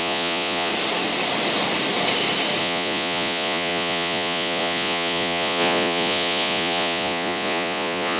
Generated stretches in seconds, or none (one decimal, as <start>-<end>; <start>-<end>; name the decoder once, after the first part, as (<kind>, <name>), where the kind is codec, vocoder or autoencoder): 0.0-0.7 (vocoder, Vocos); 2.6-8.2